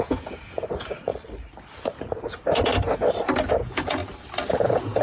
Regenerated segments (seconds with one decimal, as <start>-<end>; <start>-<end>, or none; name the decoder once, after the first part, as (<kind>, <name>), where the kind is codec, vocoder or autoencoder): 0.0-1.1 (vocoder, Vocos); 3.5-4.0; 4.5-5.0